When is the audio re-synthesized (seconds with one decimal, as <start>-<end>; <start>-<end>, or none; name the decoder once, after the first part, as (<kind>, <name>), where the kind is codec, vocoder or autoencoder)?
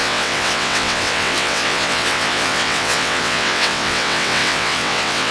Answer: 0.0-5.3 (vocoder, WaveNeXt)